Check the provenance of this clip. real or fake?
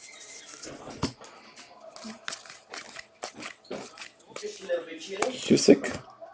real